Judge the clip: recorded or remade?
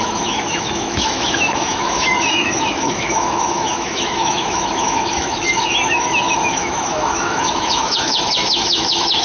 remade